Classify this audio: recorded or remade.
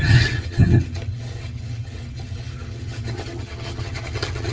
remade